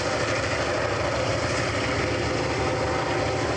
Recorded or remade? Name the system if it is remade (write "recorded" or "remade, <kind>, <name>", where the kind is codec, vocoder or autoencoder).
recorded